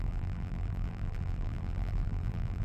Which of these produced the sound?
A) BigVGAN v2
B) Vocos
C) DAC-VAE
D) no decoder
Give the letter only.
A